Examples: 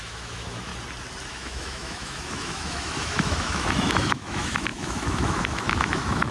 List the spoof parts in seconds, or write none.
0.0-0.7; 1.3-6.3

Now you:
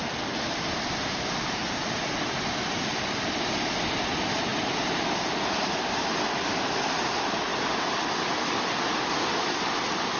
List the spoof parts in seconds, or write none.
0.0-1.6; 4.0-4.5; 6.2-7.5; 8.7-10.2

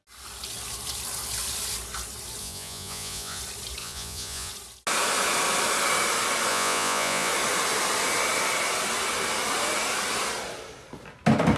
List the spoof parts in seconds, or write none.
2.4-3.4; 3.8-4.5; 6.5-7.3

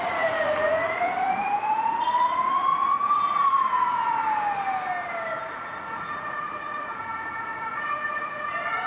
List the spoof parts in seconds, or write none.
0.0-4.2; 5.5-8.9

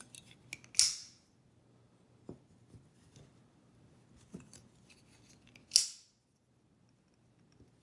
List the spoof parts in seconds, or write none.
none

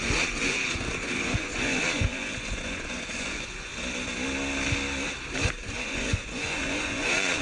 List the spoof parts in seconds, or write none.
0.0-3.7; 5.5-7.4